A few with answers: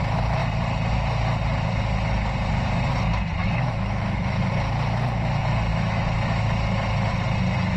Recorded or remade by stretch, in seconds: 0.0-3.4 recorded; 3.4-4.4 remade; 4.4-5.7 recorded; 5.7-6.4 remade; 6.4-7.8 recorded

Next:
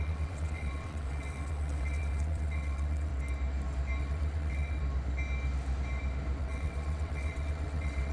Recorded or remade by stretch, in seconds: 0.0-3.1 remade; 3.1-4.0 recorded; 4.0-4.8 remade; 4.8-6.4 recorded; 6.4-8.1 remade

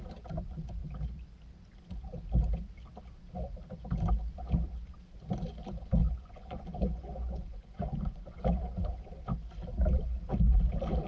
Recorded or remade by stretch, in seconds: 0.0-6.0 recorded; 6.0-8.6 remade; 8.6-11.1 recorded

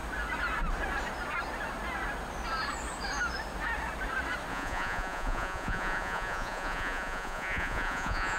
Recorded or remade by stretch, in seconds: 0.0-4.5 recorded; 4.5-8.4 remade

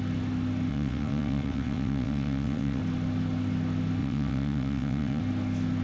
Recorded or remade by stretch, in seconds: 0.0-0.7 recorded; 0.7-2.8 remade; 2.8-4.0 recorded; 4.0-5.2 remade; 5.2-5.8 recorded

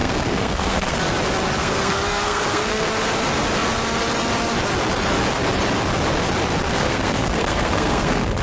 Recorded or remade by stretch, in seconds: 0.0-1.0 remade; 1.0-1.6 recorded; 1.6-2.9 remade; 2.9-6.7 recorded; 6.7-8.4 remade

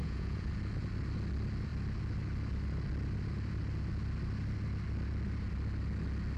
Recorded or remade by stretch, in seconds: 0.0-0.5 remade; 0.5-6.4 recorded

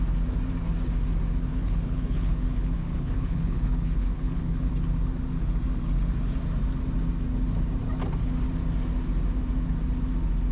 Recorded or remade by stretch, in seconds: 0.0-1.5 recorded; 1.5-4.7 remade; 4.7-10.5 recorded